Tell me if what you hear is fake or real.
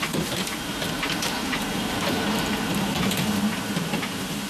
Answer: fake